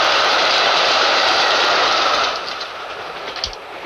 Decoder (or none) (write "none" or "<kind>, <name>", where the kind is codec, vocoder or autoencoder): vocoder, BigVGAN v2